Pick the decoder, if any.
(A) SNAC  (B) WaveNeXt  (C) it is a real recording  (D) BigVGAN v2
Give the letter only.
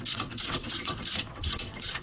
B